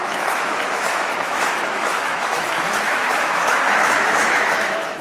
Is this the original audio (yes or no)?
no